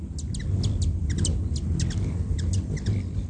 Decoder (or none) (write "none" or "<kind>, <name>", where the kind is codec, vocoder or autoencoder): none